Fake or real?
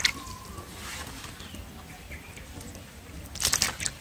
real